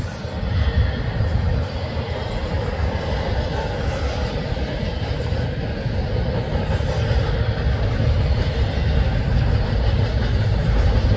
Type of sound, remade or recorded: recorded